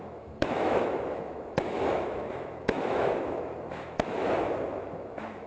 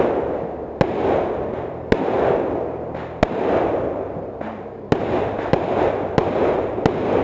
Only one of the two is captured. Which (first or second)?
second